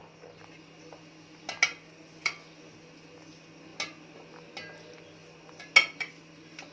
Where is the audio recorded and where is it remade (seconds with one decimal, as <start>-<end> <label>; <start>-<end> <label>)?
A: 0.0-6.7 recorded